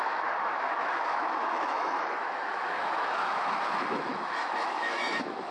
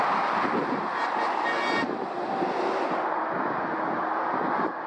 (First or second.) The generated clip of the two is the first